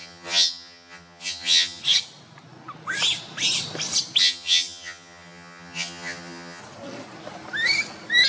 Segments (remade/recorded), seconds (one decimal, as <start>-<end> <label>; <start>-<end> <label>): 0.0-1.8 remade; 1.8-4.2 recorded; 4.2-6.6 remade; 6.6-8.3 recorded